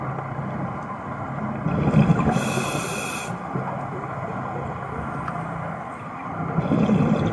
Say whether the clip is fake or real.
real